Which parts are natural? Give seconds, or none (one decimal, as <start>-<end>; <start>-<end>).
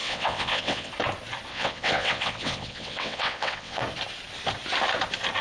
0.9-1.5; 3.8-5.4